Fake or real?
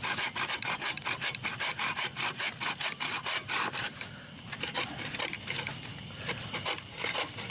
fake